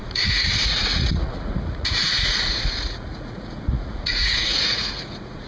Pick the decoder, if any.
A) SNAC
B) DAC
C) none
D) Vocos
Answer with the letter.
D